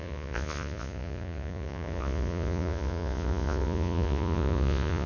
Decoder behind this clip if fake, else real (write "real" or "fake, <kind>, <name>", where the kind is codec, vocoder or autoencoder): fake, vocoder, Vocos